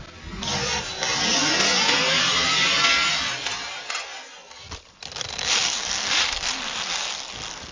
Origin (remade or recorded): recorded